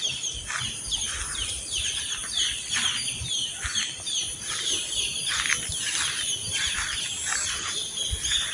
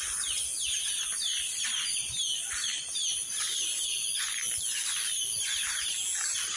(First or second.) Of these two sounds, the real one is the second